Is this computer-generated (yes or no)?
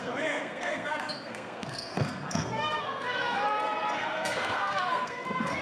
yes